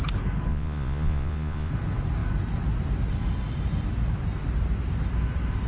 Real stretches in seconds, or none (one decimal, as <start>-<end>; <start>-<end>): 0.0-0.5; 1.7-5.7

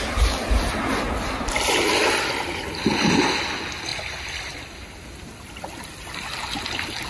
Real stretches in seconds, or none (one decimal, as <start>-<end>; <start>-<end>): 0.0-7.1

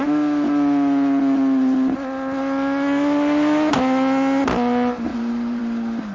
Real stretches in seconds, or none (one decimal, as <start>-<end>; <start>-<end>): 0.0-5.1; 5.6-6.1

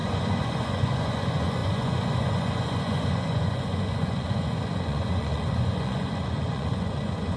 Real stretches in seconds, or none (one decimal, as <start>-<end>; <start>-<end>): none

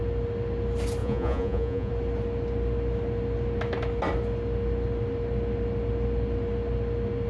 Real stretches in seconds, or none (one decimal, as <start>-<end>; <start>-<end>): 0.0-1.0; 1.9-7.3

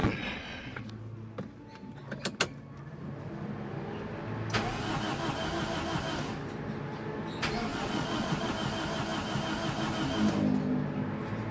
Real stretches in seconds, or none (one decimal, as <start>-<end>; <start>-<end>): 0.8-7.7; 8.5-11.5